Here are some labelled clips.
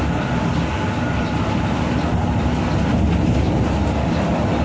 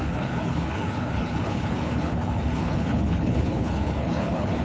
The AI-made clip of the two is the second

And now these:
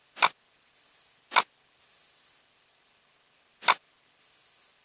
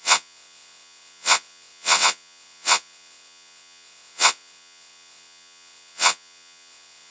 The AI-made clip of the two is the second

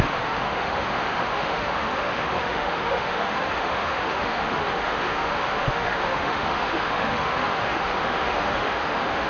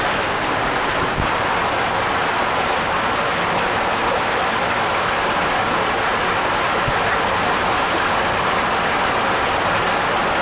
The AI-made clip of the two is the first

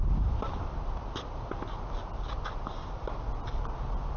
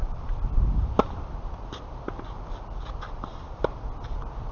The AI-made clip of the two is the second